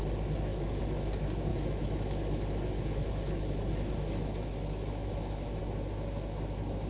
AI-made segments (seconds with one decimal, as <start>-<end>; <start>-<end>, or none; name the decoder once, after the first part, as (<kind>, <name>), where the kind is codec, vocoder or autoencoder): 0.5-1.1 (autoencoder, DAC-VAE); 1.5-5.6